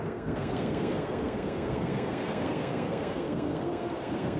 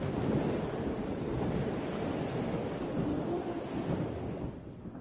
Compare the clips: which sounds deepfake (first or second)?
first